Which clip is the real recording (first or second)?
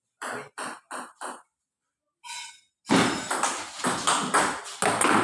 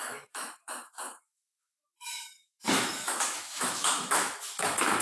first